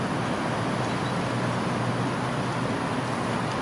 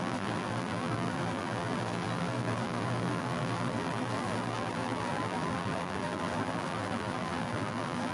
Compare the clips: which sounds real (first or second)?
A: first